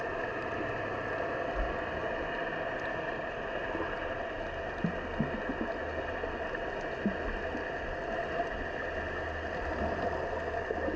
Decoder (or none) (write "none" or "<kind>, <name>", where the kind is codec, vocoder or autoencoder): none